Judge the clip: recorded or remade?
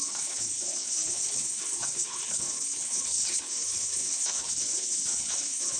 remade